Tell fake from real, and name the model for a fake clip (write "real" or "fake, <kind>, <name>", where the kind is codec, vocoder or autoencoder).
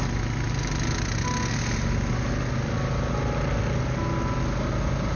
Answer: real